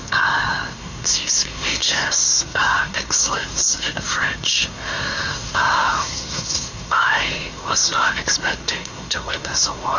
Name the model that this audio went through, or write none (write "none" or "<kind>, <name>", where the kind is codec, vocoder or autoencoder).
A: codec, SNAC